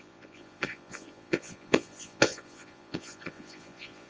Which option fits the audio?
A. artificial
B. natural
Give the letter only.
A